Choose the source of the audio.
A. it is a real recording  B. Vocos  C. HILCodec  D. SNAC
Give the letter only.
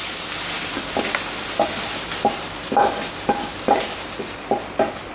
A